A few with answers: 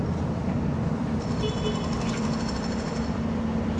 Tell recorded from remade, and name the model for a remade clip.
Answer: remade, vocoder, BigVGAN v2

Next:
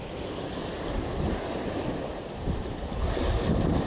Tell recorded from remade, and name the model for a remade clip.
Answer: remade, vocoder, BigVGAN v2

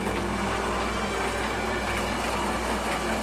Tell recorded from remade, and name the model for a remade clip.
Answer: recorded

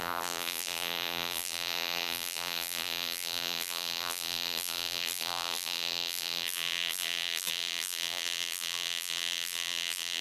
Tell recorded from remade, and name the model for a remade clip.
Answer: remade, vocoder, BigVGAN v2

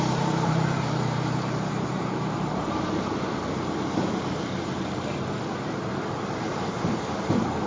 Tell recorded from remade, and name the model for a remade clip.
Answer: remade, vocoder, BigVGAN v2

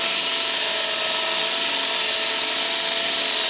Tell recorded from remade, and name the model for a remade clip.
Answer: recorded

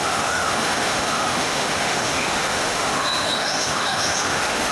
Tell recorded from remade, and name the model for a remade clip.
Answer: remade, autoencoder, DAC-VAE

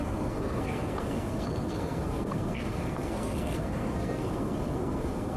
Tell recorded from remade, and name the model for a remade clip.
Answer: remade, codec, SNAC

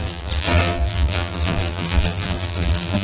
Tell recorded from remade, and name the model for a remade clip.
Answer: remade, vocoder, BigVGAN v2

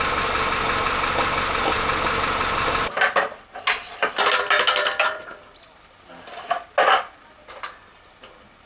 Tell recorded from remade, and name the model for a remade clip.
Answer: recorded